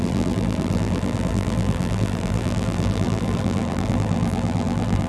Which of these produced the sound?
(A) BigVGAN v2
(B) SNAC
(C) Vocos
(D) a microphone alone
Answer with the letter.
A